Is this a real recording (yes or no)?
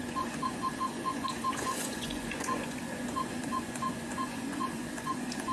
no